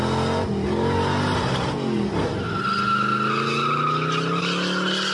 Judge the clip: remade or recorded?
recorded